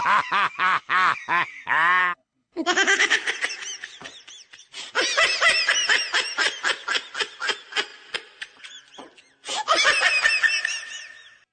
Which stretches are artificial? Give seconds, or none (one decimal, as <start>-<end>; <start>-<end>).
2.0-3.3